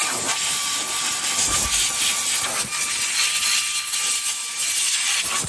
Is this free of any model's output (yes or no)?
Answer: yes